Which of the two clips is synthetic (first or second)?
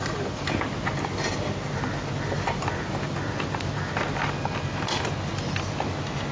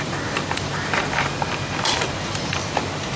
second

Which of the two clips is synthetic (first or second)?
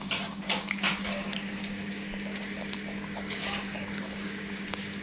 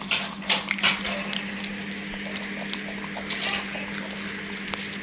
first